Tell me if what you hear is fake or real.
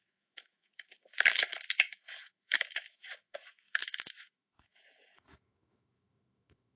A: fake